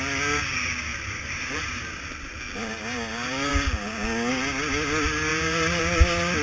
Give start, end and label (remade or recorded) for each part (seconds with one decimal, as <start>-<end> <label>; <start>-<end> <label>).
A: 0.0-0.9 recorded; 0.9-2.4 remade; 2.4-5.3 recorded; 5.3-5.8 remade; 5.8-6.4 recorded